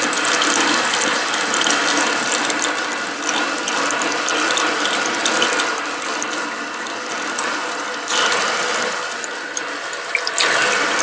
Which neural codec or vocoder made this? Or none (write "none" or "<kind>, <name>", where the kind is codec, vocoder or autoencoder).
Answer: none